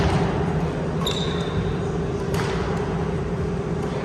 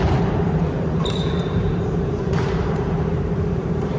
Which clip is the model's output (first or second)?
second